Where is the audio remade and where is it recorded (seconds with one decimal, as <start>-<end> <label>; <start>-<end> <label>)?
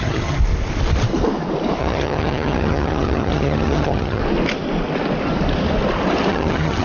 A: 0.0-0.4 remade; 0.4-1.8 recorded; 1.8-4.2 remade; 4.2-6.3 recorded; 6.3-6.8 remade